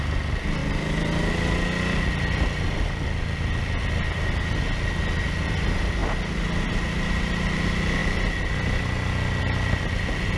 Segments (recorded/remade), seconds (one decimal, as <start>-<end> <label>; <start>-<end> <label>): 0.0-10.4 recorded